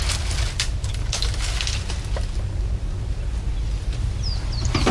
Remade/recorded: recorded